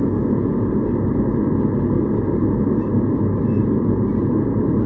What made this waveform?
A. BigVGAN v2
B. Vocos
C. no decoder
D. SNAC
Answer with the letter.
C